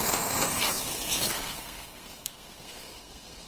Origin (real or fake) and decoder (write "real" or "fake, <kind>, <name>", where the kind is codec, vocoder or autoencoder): fake, codec, SNAC